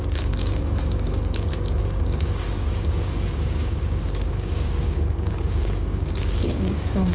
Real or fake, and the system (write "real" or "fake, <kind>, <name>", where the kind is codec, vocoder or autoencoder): fake, codec, DAC